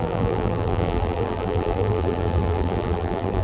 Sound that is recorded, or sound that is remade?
remade